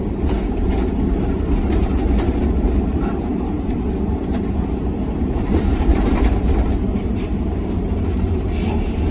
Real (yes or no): no